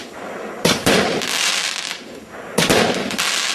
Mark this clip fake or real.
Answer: real